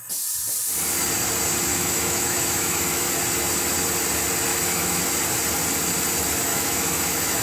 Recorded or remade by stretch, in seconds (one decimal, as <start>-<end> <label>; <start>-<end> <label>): 0.0-1.7 recorded; 1.7-3.1 remade; 3.1-4.5 recorded; 4.5-5.0 remade; 5.0-6.5 recorded; 6.5-7.4 remade